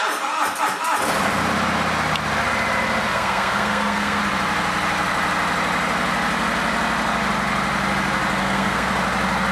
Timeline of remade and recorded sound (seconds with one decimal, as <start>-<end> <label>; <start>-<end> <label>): 0.0-3.1 recorded; 3.1-4.2 remade; 4.2-8.4 recorded; 8.4-8.9 remade; 8.9-9.5 recorded